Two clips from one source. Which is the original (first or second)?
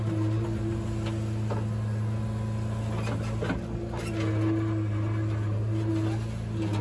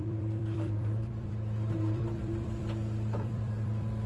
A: first